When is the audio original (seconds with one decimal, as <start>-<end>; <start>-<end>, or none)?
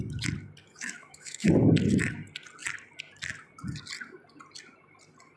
0.0-0.6; 1.5-5.4